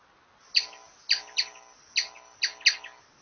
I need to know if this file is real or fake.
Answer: real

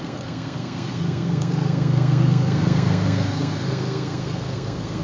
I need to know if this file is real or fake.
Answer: fake